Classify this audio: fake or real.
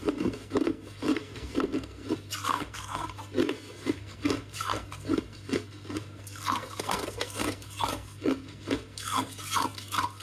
fake